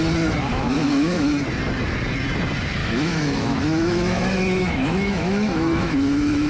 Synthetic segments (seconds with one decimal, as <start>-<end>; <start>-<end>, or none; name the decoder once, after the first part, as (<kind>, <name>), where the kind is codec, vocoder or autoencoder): 0.5-1.3 (autoencoder, DAC-VAE); 2.8-6.5